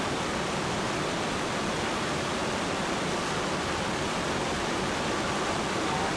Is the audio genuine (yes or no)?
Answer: no